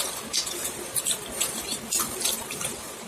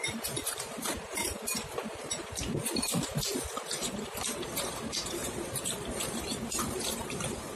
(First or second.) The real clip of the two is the first